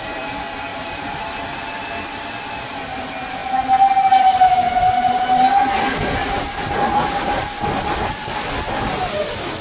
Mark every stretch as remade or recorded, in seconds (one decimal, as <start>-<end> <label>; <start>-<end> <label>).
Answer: 0.0-0.7 recorded; 0.7-1.6 remade; 1.6-6.2 recorded; 6.2-7.1 remade; 7.1-9.6 recorded